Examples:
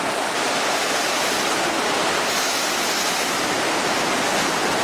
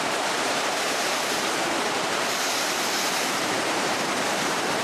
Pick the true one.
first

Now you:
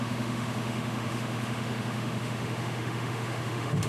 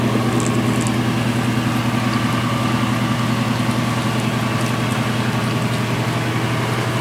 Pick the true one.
second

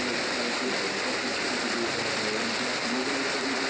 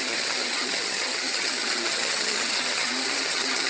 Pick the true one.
first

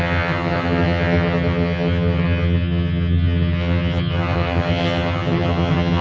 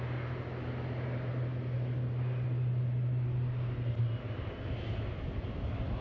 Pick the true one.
second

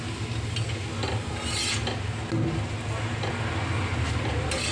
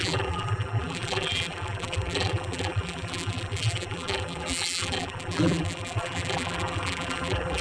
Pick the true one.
first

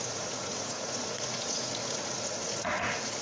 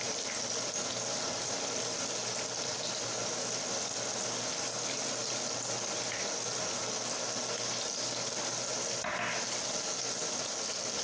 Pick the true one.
second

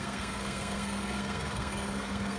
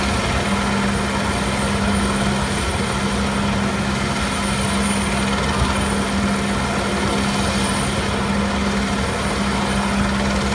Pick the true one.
second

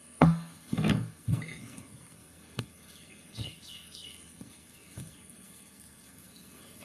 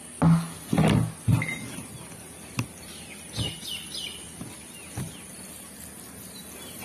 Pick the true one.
second